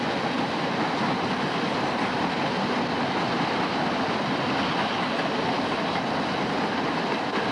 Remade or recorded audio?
recorded